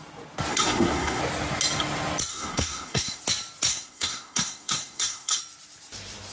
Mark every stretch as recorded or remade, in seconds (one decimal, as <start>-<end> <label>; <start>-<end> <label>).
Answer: 0.0-0.5 recorded; 0.5-1.2 remade; 1.2-2.3 recorded; 2.3-3.2 remade; 3.2-3.7 recorded; 3.7-5.4 remade; 5.4-6.3 recorded